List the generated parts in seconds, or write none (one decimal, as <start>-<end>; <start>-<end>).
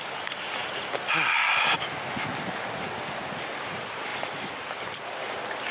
none